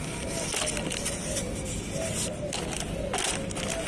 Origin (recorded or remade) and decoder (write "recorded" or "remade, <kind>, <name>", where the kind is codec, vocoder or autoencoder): recorded